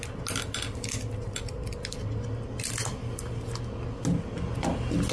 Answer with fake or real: real